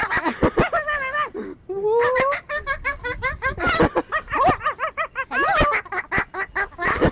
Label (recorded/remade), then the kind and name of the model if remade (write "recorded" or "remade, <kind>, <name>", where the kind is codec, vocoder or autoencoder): recorded